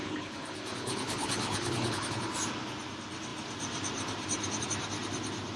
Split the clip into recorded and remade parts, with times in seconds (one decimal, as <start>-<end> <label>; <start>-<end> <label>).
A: 0.0-2.3 remade; 2.3-5.6 recorded